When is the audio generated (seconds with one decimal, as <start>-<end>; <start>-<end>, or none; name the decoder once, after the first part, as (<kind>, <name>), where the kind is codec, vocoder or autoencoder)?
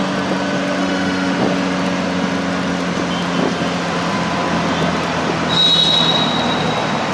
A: 0.8-1.3 (autoencoder, DAC-VAE)